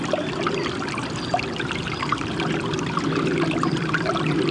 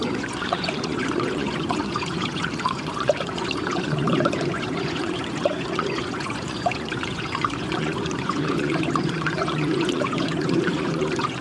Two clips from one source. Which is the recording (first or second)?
first